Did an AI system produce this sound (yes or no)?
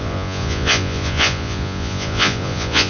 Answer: yes